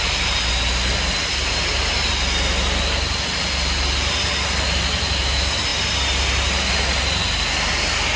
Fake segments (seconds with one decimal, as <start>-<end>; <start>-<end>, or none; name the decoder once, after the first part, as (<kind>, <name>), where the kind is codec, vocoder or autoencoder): none